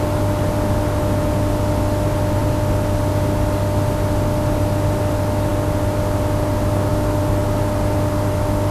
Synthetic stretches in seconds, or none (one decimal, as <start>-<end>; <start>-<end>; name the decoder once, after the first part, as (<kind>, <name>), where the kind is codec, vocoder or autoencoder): none